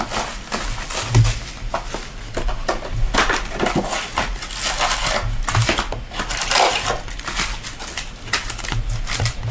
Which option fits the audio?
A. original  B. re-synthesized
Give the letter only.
A